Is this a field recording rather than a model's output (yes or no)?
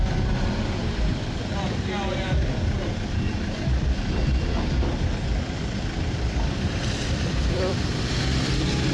no